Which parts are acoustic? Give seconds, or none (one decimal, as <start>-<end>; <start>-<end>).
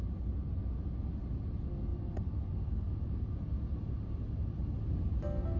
0.0-5.6